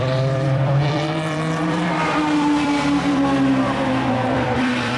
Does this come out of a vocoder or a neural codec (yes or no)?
yes